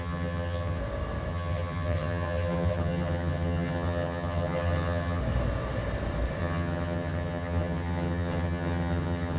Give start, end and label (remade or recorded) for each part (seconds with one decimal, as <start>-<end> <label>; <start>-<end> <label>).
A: 0.0-0.8 remade; 0.8-1.3 recorded; 1.3-5.2 remade; 5.2-6.4 recorded; 6.4-9.4 remade